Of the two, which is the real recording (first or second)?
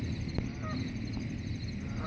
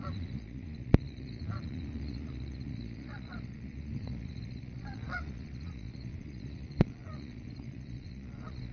first